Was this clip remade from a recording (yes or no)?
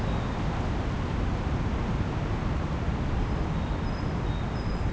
no